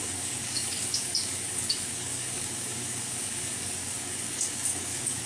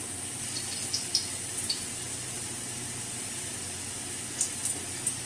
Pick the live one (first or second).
second